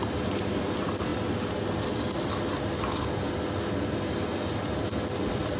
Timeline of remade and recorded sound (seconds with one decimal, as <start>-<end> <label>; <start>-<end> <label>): 0.0-5.6 recorded